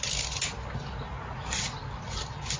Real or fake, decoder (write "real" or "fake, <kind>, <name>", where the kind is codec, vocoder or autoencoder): real